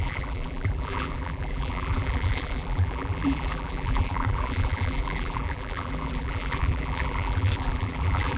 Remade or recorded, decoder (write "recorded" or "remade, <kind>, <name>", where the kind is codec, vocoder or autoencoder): remade, vocoder, BigVGAN v2